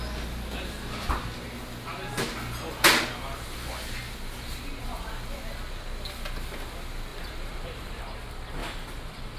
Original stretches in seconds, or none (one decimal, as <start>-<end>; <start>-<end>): 0.0-7.1; 8.0-8.6